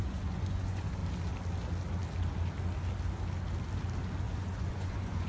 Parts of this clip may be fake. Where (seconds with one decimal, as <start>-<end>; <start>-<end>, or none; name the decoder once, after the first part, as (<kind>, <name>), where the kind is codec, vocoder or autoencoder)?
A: 0.0-1.0 (vocoder, Vocos); 4.2-5.3